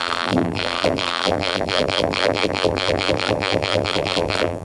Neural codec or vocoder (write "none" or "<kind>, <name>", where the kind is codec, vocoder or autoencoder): vocoder, BigVGAN v2